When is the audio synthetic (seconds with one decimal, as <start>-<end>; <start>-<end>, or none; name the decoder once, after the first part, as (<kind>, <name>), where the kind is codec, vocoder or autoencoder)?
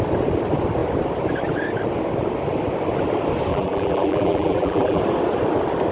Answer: 3.5-5.0 (vocoder, BigVGAN v2)